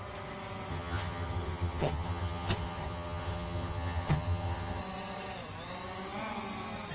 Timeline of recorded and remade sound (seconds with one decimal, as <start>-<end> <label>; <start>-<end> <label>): 0.0-0.7 recorded; 0.7-4.8 remade; 4.8-6.9 recorded

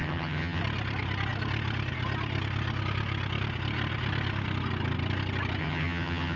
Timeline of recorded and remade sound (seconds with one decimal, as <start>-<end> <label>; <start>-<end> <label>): 0.0-0.6 remade; 0.6-5.6 recorded; 5.6-6.4 remade